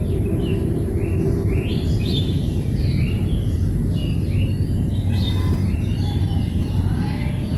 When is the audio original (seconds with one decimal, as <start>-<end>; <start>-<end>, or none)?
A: 4.0-5.5